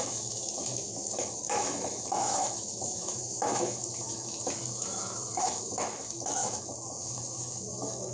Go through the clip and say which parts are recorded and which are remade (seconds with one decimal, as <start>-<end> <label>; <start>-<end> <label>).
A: 0.0-8.1 remade